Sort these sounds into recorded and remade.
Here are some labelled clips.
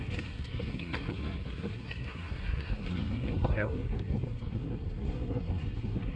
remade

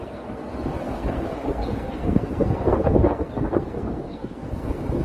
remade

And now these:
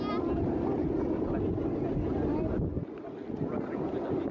recorded